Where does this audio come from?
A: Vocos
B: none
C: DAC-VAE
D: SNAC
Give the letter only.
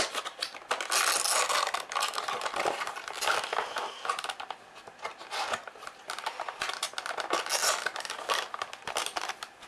B